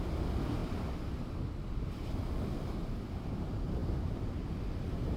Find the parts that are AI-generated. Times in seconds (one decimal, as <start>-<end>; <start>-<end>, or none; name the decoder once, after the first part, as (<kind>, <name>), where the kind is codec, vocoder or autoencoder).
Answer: none